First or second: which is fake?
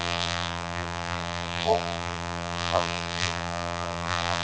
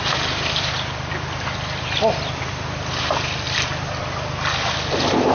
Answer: first